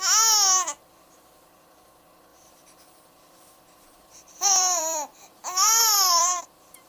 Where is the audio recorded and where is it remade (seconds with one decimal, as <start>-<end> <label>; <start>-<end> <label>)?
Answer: 0.0-2.3 recorded; 2.3-6.4 remade; 6.4-6.9 recorded